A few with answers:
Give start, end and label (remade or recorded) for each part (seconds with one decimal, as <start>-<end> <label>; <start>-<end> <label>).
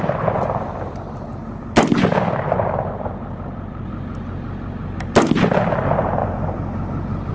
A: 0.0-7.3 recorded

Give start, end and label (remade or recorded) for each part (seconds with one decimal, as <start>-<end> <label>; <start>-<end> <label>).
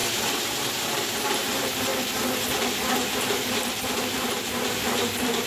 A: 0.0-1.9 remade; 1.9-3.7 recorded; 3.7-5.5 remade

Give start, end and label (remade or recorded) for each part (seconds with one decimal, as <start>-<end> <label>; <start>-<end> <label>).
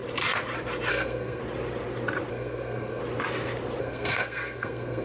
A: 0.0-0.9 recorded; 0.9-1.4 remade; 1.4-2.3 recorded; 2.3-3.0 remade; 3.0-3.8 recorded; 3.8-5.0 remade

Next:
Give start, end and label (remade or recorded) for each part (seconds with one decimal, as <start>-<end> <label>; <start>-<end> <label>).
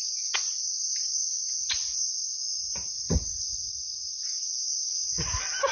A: 0.0-5.7 recorded